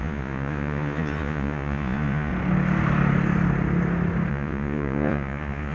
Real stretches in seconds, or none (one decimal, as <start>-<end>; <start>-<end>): 2.3-4.3